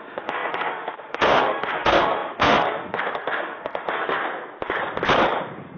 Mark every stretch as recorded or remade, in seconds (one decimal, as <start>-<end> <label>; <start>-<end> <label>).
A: 0.0-4.2 remade; 4.2-5.8 recorded